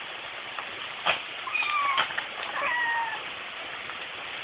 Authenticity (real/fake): fake